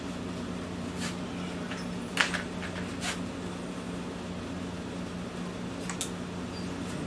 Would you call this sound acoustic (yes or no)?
yes